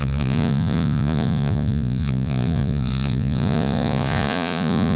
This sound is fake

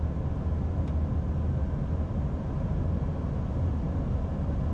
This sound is real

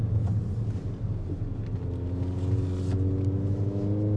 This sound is real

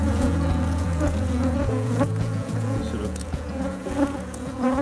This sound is fake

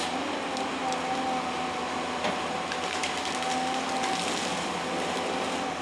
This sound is real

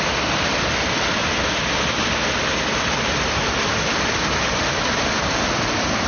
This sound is real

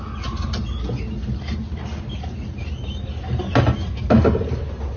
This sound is real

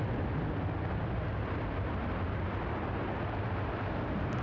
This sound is real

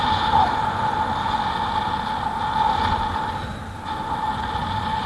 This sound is real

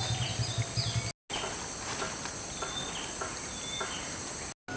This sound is real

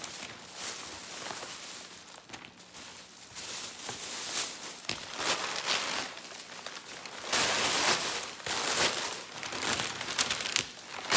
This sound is real